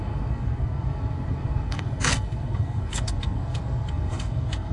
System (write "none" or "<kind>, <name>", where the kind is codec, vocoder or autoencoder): codec, SNAC